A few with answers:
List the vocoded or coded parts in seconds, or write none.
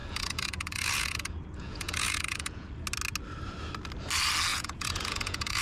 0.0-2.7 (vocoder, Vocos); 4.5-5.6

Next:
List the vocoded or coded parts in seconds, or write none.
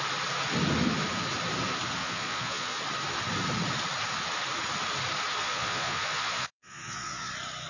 2.0-2.8 (vocoder, Vocos); 5.4-7.3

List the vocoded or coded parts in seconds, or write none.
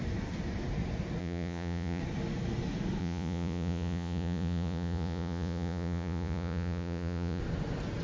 1.2-2.0 (vocoder, Vocos); 3.0-7.4